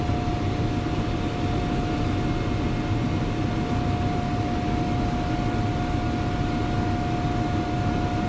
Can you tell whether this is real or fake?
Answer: real